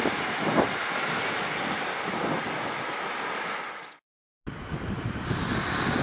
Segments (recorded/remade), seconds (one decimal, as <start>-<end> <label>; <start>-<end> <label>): 0.0-6.0 recorded